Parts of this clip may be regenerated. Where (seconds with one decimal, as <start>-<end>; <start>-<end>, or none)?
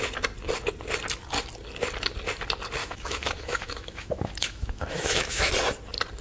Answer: 2.8-5.5